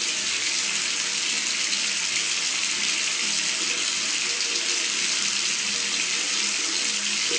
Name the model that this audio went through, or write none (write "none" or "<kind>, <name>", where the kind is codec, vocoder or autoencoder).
none